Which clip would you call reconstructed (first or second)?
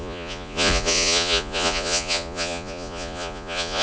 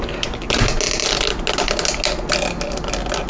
first